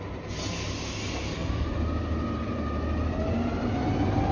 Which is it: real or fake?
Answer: real